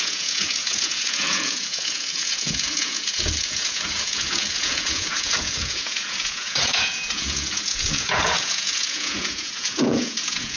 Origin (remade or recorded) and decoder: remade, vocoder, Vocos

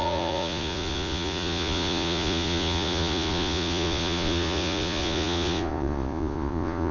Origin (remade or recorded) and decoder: remade, vocoder, Vocos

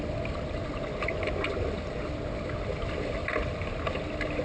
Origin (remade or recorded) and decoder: recorded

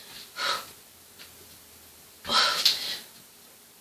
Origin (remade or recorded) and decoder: recorded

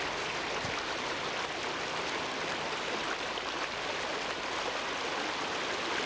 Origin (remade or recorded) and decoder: recorded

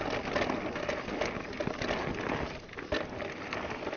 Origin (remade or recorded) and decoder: recorded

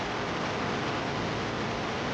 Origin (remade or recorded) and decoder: recorded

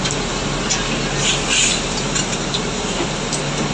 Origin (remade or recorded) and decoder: recorded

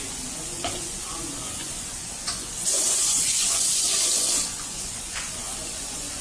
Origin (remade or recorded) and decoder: remade, vocoder, Vocos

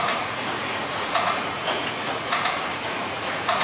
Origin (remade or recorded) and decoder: remade, vocoder, Vocos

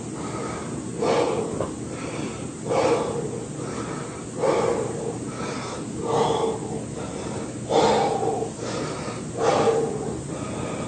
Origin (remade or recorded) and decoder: recorded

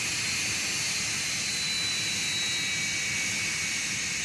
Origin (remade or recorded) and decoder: recorded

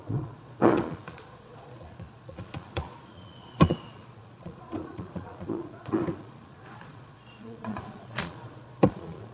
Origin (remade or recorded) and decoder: remade, vocoder, Vocos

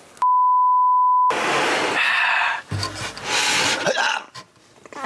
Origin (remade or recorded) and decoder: recorded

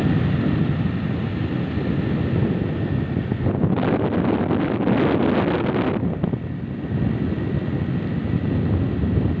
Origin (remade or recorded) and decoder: recorded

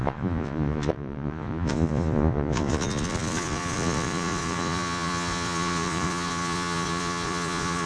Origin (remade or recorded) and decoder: remade, vocoder, Vocos